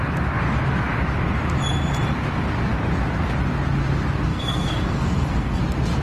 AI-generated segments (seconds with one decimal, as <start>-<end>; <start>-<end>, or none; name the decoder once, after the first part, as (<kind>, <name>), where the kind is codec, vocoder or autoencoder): 4.3-5.6 (codec, SNAC)